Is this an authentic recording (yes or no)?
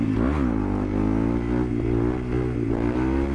yes